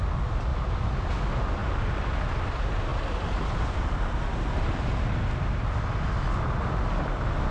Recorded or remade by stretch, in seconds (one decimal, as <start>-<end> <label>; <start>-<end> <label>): 0.0-0.5 recorded; 0.5-1.1 remade; 1.1-1.6 recorded; 1.6-2.3 remade; 2.3-2.9 recorded; 2.9-5.8 remade; 5.8-7.5 recorded